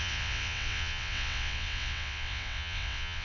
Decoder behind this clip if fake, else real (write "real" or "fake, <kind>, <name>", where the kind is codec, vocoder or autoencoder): fake, vocoder, WaveNeXt